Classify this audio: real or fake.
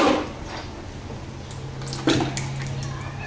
real